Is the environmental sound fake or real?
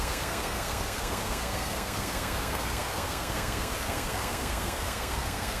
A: fake